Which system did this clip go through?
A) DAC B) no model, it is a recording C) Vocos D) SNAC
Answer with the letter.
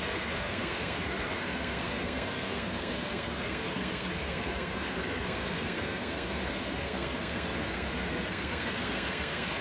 D